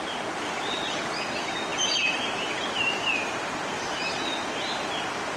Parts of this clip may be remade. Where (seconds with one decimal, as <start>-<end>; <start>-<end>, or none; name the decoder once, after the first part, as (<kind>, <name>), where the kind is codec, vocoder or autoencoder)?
0.0-0.8 (vocoder, BigVGAN v2); 1.7-4.9